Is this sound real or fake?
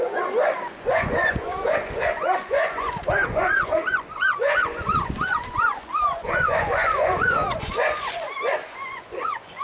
fake